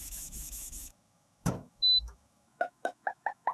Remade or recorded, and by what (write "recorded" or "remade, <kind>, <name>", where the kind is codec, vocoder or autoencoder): remade, autoencoder, DAC-VAE